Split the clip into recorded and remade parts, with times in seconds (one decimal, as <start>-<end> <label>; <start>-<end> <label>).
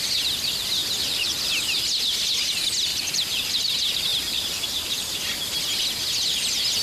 0.0-0.8 recorded; 0.8-1.5 remade; 1.5-2.9 recorded; 2.9-3.6 remade; 3.6-4.1 recorded; 4.1-5.1 remade; 5.1-6.8 recorded